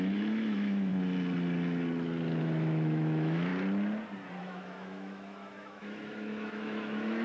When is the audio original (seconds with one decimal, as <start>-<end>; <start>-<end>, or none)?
0.9-2.4; 3.5-4.4